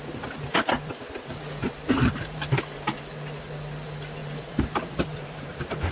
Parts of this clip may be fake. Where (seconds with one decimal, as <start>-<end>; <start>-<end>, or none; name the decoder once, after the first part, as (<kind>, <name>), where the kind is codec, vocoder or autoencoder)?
1.6-3.0 (vocoder, BigVGAN v2); 4.2-5.9